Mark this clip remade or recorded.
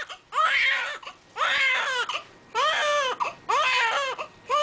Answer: recorded